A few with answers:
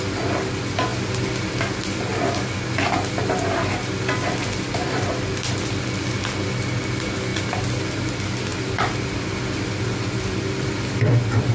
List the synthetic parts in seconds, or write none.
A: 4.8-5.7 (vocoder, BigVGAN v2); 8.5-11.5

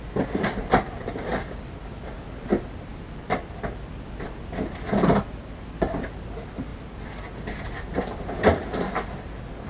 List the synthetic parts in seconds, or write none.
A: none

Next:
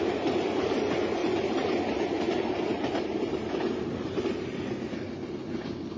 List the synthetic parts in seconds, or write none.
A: 1.2-4.2 (vocoder, BigVGAN v2)

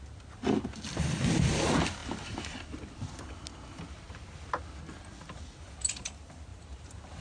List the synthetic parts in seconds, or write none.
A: 6.5-7.2 (vocoder, BigVGAN v2)